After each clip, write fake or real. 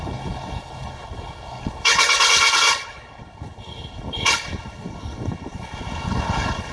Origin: fake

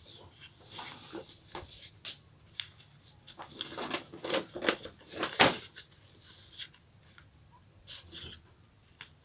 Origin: real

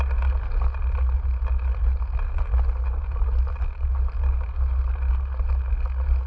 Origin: real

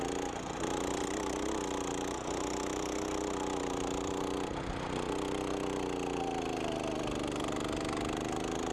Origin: real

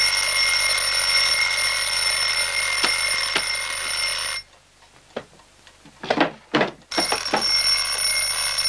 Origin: real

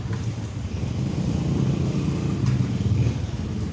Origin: real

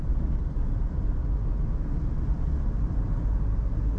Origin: real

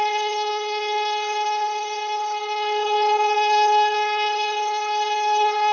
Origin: fake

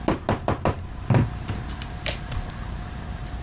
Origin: real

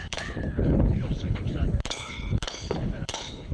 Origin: fake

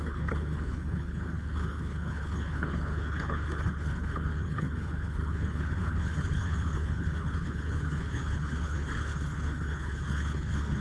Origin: fake